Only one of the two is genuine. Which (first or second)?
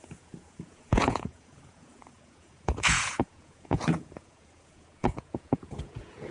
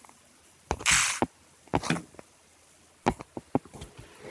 second